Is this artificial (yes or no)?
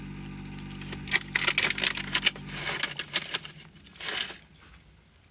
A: no